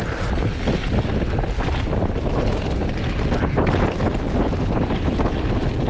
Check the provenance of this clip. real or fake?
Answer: real